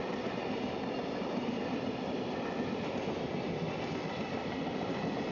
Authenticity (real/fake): real